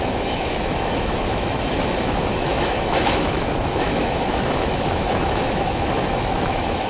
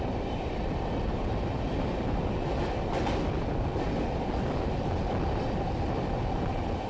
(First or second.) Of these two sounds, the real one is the second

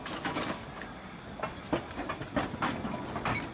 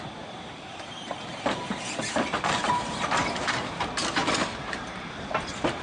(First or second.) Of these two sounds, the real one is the first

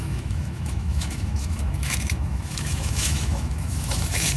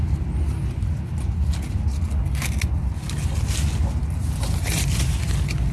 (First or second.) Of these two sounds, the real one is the second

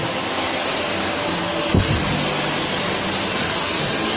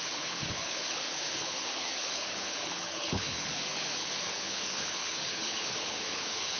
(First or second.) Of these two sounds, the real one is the first